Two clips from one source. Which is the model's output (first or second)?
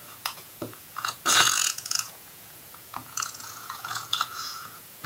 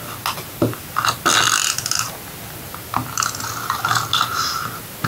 first